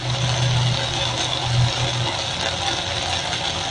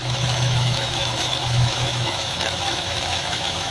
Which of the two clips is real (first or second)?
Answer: first